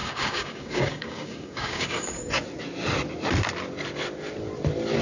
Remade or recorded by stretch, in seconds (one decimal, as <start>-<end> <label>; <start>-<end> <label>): 0.0-2.3 remade; 2.3-5.0 recorded